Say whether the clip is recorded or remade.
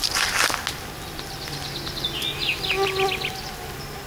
recorded